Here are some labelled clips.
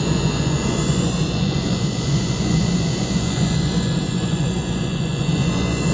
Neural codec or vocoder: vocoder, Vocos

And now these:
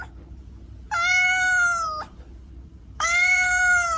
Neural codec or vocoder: vocoder, BigVGAN v2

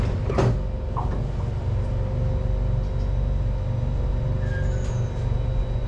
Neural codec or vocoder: none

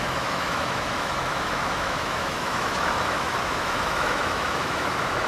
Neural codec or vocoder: autoencoder, DAC-VAE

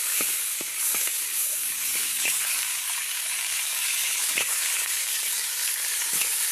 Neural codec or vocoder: codec, DAC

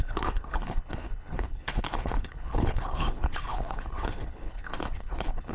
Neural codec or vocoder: codec, HILCodec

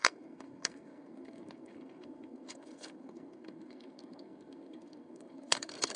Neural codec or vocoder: codec, SNAC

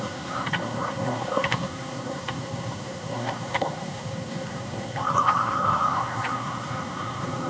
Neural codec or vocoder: codec, SNAC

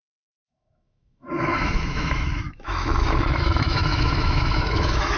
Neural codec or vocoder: autoencoder, DAC-VAE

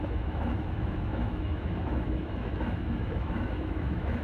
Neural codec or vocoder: autoencoder, DAC-VAE